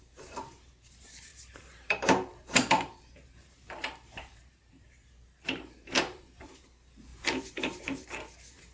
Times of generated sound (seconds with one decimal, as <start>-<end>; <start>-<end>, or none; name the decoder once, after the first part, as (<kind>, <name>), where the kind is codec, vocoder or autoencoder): 0.0-8.7 (vocoder, BigVGAN v2)